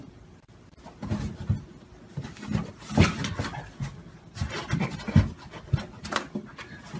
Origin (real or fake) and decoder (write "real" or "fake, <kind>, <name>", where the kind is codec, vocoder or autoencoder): real